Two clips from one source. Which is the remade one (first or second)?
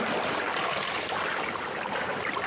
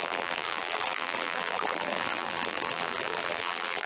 second